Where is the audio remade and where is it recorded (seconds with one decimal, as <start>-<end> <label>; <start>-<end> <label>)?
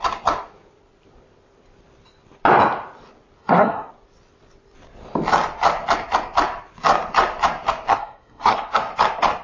0.0-3.4 recorded; 3.4-3.9 remade; 3.9-7.9 recorded; 7.9-8.9 remade; 8.9-9.4 recorded